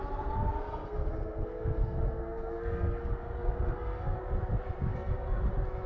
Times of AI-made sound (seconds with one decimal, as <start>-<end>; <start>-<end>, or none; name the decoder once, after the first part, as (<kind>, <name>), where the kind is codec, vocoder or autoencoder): 0.7-4.2 (codec, SNAC); 4.9-5.4